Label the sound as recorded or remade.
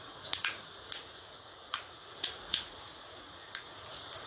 remade